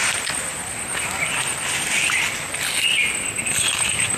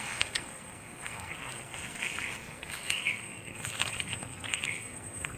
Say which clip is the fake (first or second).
second